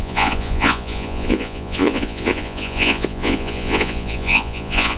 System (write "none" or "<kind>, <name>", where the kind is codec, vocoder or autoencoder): vocoder, Vocos